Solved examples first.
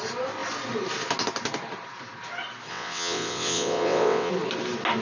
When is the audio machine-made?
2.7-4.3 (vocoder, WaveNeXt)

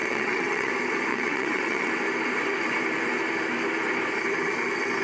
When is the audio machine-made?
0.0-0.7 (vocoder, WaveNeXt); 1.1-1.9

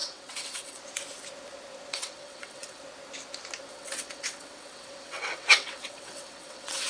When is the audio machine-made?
0.0-0.8 (vocoder, WaveNeXt); 1.9-2.8; 3.7-6.9

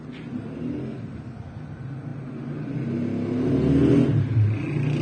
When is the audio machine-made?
none

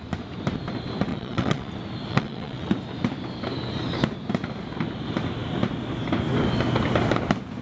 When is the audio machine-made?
1.1-1.7 (vocoder, WaveNeXt); 2.1-2.7

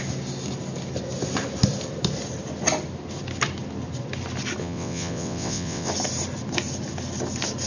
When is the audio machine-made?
4.6-5.9 (vocoder, WaveNeXt)